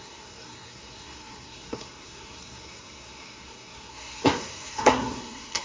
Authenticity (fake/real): fake